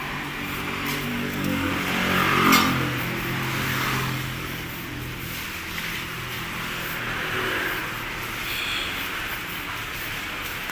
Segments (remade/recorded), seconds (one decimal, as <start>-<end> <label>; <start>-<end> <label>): 0.0-1.1 recorded; 1.1-1.7 remade; 1.7-3.7 recorded; 3.7-4.7 remade; 4.7-10.7 recorded